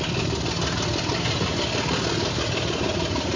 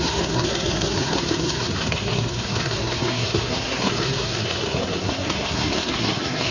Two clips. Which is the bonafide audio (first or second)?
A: first